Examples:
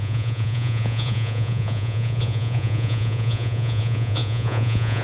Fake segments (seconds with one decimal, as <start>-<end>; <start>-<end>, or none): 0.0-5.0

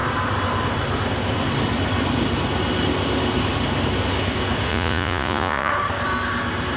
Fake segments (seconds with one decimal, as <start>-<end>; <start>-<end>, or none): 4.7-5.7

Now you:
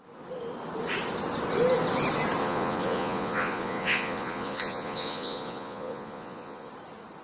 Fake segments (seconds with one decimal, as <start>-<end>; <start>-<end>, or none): 2.4-6.7